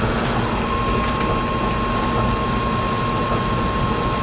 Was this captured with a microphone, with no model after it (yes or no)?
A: yes